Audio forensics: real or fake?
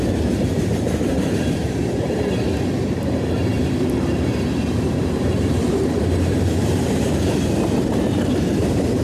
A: fake